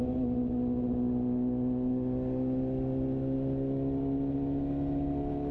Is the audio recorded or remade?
recorded